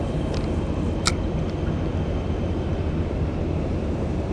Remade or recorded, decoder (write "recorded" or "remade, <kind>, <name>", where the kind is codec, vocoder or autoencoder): recorded